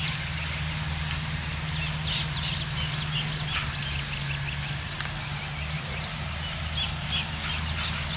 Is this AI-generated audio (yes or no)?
no